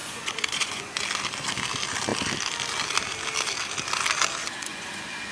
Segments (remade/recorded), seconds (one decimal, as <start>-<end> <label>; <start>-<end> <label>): 0.0-1.0 remade; 1.0-4.4 recorded; 4.4-5.3 remade